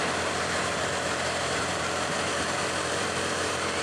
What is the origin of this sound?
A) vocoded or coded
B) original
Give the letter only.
A